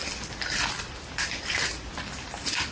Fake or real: real